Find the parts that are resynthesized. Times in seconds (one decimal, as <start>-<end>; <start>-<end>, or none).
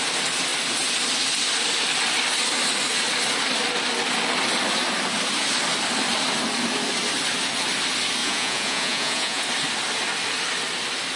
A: 8.2-9.4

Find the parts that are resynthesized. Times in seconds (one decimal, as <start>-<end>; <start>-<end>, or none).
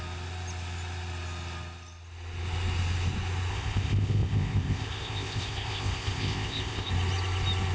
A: 3.5-6.9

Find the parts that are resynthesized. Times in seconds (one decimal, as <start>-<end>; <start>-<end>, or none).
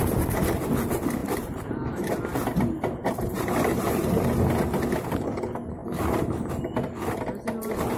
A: 1.2-2.1; 3.0-4.3; 5.8-6.5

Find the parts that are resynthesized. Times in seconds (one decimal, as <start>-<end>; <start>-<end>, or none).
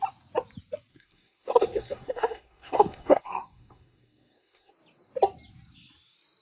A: 0.9-4.7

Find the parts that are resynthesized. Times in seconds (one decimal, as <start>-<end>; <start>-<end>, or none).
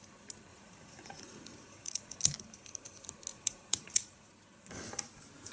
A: 0.5-2.2; 3.3-4.3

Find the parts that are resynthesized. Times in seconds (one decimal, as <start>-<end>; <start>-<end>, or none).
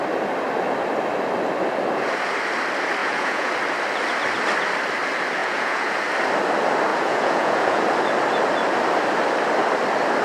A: 3.0-3.5; 5.4-6.0; 6.9-7.8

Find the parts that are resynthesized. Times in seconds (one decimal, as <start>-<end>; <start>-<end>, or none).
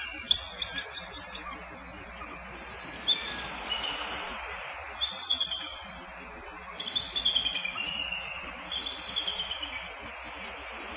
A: none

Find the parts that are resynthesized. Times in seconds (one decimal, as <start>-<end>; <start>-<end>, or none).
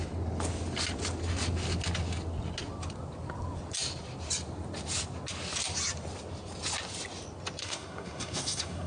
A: 7.6-8.9